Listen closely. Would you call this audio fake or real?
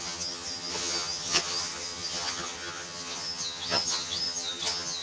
fake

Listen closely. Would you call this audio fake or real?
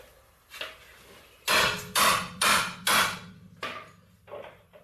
real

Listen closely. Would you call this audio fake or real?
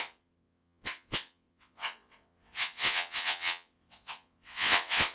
fake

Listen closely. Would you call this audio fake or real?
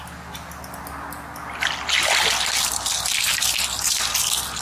real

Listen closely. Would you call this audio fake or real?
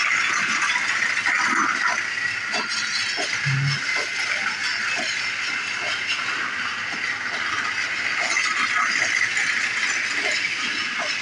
real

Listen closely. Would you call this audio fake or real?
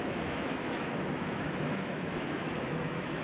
fake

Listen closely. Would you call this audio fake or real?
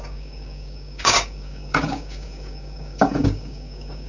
fake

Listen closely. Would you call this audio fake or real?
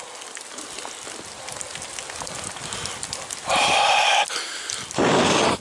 real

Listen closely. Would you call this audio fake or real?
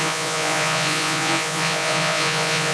fake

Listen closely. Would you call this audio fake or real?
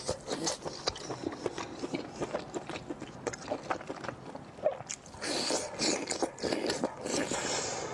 real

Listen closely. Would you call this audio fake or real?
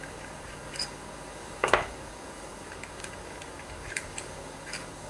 fake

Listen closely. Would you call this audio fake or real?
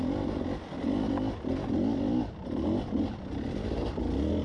real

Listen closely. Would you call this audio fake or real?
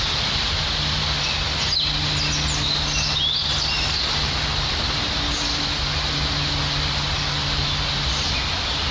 real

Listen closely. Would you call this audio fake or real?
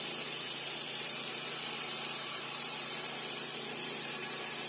fake